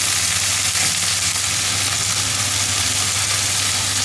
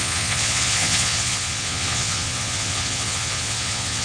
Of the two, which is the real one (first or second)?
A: first